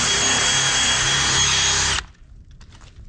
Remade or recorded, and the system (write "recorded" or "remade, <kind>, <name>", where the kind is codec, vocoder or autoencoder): recorded